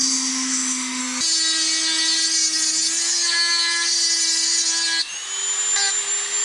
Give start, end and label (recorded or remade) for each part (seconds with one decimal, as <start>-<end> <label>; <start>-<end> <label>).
0.0-1.0 remade; 1.0-6.4 recorded